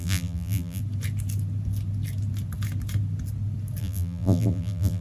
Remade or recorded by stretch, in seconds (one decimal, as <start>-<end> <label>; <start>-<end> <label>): 0.0-0.8 remade; 0.8-3.8 recorded; 3.8-5.0 remade